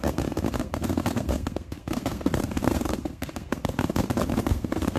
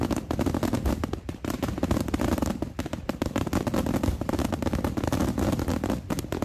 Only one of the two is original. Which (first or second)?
second